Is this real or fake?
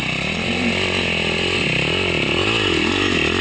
real